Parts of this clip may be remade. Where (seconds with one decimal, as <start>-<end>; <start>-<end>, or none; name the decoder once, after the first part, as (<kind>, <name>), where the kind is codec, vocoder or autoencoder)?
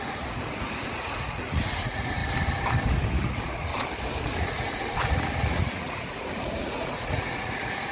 0.0-2.2 (vocoder, Vocos); 3.1-3.7; 4.4-7.9